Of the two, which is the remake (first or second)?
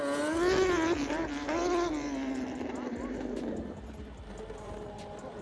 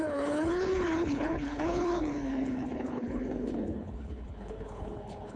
second